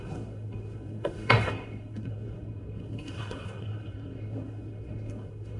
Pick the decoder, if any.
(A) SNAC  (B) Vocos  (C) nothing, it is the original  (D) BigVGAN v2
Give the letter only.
A